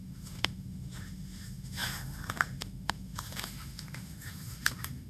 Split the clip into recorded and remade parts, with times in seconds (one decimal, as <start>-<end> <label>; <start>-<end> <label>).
0.0-5.1 remade